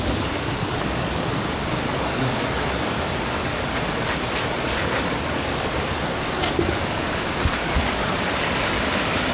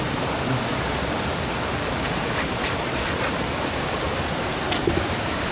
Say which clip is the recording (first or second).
second